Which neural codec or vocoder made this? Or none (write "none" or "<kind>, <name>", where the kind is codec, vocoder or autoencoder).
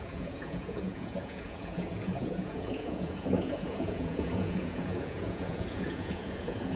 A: vocoder, Vocos